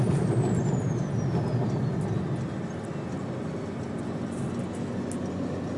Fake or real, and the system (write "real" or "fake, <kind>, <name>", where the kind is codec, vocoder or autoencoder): real